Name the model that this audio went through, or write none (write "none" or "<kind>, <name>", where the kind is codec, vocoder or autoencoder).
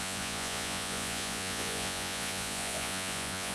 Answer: vocoder, Vocos